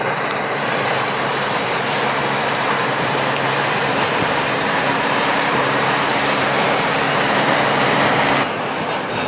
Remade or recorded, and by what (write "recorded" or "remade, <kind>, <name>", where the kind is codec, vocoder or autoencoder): remade, vocoder, BigVGAN v2